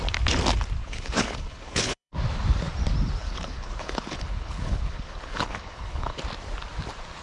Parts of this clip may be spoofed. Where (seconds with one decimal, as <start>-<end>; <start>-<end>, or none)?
0.8-2.1; 3.2-6.2